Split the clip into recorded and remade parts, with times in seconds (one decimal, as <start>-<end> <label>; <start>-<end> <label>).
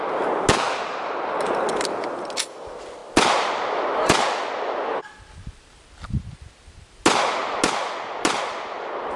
0.0-9.2 recorded